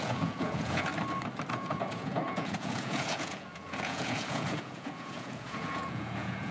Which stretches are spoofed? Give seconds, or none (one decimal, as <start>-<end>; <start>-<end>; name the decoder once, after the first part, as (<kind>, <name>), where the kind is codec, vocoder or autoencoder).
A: 0.0-0.9 (vocoder, Vocos); 1.5-6.5